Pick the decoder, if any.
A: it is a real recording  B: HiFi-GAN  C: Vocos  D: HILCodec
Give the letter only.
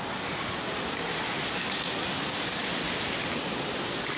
A